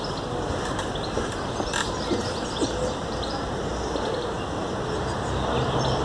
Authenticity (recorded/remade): remade